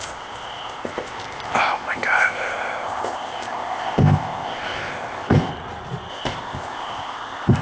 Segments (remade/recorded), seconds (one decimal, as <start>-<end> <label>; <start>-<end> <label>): 0.0-5.5 remade; 5.5-6.1 recorded; 6.1-7.6 remade